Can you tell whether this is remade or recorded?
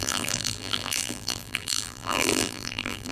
remade